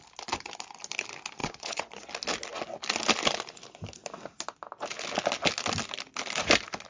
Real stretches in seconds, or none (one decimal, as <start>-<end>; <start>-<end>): 0.0-1.4; 2.1-6.9

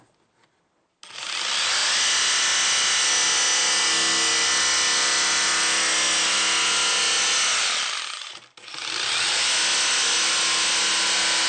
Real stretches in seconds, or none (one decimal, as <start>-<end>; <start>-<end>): 0.0-11.5

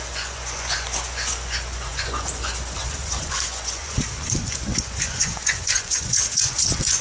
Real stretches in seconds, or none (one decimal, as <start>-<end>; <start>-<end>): none